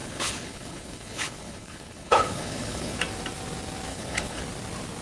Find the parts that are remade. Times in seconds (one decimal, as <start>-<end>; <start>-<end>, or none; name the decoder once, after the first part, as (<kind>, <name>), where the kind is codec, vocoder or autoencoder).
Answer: 0.0-3.0 (codec, HILCodec); 3.9-4.4